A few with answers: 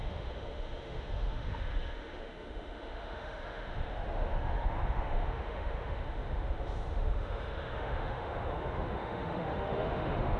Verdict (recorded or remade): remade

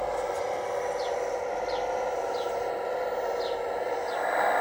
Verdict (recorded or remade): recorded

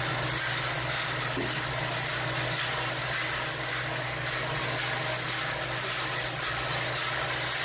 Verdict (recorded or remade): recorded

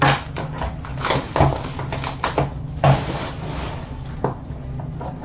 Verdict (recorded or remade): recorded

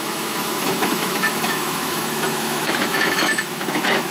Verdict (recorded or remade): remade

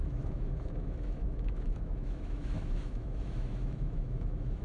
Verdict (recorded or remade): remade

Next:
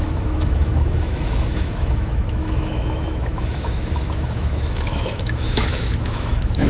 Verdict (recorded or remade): remade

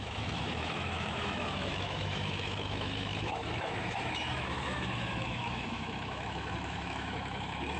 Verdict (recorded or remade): remade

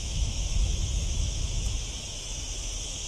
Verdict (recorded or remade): remade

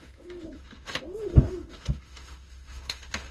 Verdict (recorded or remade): remade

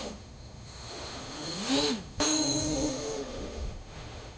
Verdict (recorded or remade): remade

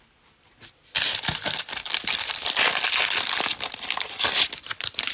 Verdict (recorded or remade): recorded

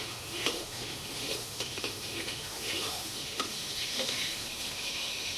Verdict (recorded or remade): remade